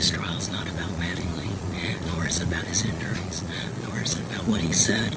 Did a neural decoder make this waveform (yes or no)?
yes